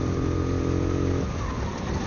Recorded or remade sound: recorded